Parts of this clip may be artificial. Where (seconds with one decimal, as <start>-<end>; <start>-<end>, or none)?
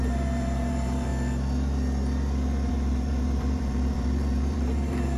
0.0-1.1; 2.7-5.2